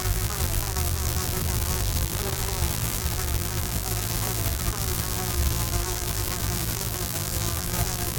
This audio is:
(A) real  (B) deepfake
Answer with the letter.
B